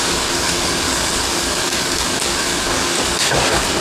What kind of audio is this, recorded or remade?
remade